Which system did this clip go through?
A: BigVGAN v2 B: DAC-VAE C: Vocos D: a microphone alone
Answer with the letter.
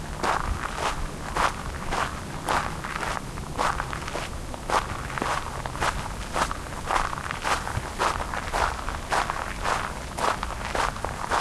D